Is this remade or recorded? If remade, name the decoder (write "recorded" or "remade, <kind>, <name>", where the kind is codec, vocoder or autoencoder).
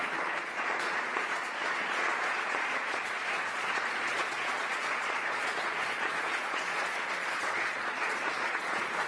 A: remade, vocoder, Vocos